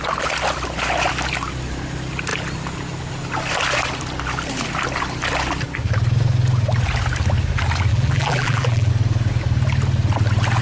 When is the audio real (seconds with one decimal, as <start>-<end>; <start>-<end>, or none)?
0.0-7.9; 8.9-10.6